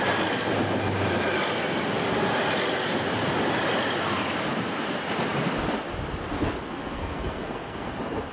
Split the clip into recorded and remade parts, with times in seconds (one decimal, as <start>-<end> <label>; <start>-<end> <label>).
0.0-6.8 recorded; 6.8-7.9 remade; 7.9-8.3 recorded